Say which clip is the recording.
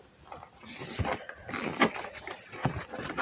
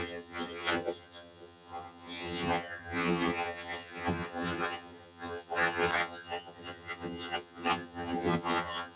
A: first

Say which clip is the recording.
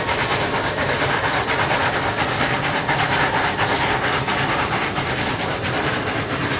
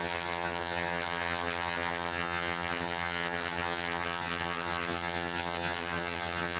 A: first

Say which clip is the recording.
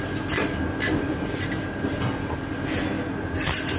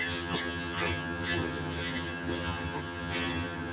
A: first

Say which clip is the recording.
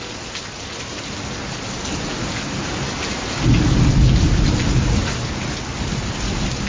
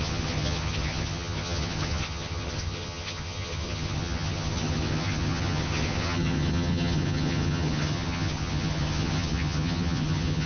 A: first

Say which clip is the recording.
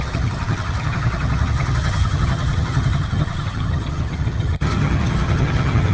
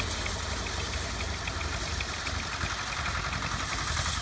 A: second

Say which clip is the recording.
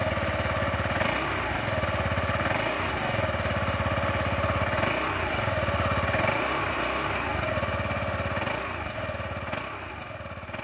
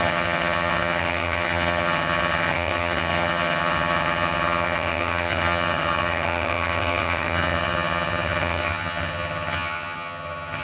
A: first